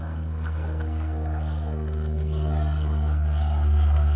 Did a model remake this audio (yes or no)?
yes